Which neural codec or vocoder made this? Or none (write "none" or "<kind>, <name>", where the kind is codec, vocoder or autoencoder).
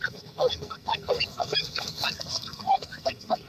codec, SNAC